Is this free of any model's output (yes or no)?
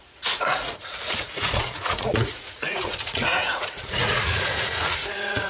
no